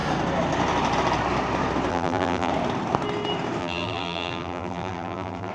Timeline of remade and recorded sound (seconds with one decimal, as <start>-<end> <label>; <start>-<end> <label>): 0.0-1.9 recorded; 1.9-2.5 remade; 2.5-3.6 recorded; 3.6-5.5 remade